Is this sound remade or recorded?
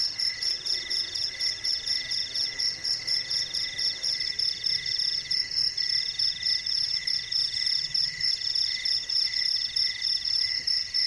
recorded